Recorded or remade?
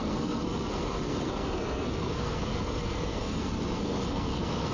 remade